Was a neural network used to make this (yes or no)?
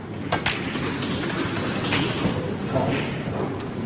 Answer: no